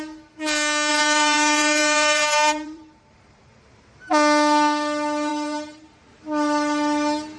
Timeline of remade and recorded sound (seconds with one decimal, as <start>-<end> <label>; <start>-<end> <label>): 0.0-0.9 recorded; 0.9-3.6 remade; 3.6-5.3 recorded; 5.3-5.9 remade; 5.9-7.4 recorded